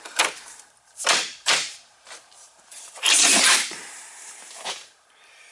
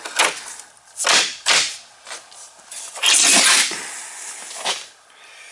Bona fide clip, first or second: second